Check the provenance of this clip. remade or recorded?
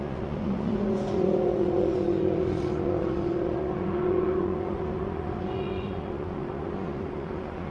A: remade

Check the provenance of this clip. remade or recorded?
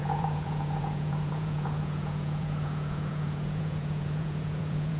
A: remade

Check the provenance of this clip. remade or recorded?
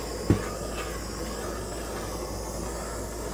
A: recorded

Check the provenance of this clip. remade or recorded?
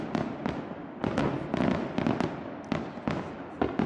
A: recorded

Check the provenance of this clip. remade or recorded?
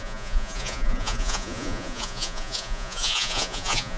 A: remade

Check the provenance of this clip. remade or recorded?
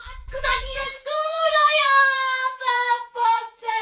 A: remade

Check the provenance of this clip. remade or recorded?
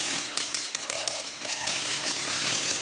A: remade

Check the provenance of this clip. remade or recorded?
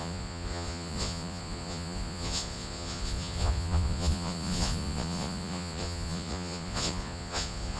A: remade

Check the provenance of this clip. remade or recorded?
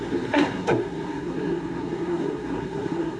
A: remade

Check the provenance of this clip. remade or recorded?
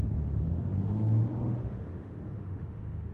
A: remade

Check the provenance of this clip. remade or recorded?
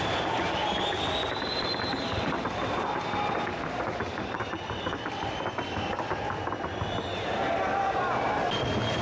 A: recorded